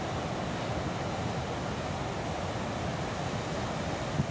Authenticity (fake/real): real